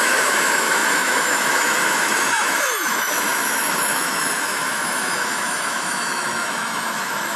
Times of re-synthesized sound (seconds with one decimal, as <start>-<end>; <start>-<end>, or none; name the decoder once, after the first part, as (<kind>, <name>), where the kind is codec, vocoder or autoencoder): 0.0-7.4 (autoencoder, DAC-VAE)